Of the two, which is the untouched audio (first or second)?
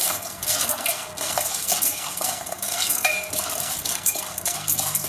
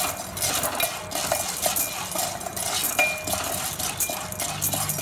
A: second